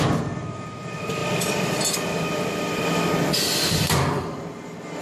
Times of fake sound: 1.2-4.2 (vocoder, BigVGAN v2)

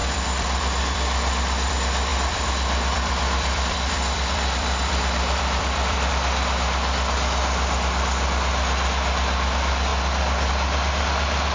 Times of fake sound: 0.0-1.7 (vocoder, BigVGAN v2); 2.1-6.1

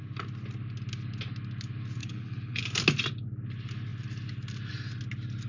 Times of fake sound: 2.0-2.6 (codec, HILCodec)

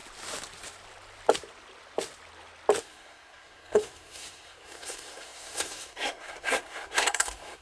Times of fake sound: 2.8-7.6 (codec, SNAC)

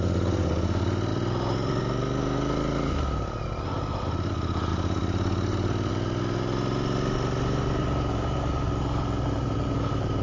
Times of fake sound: 1.1-1.8 (vocoder, BigVGAN v2); 4.7-5.9